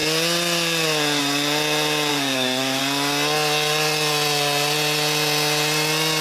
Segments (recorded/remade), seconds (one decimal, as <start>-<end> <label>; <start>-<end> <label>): 0.0-2.1 recorded; 2.1-2.8 remade; 2.8-6.2 recorded